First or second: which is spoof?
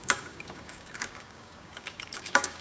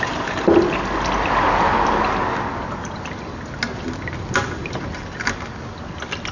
first